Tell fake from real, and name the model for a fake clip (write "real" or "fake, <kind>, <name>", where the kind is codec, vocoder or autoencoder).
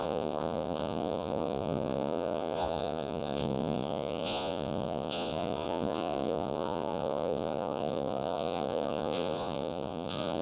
fake, vocoder, Vocos